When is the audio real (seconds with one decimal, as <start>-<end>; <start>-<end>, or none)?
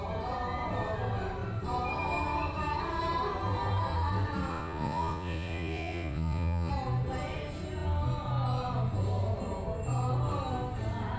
0.0-4.5; 6.7-11.2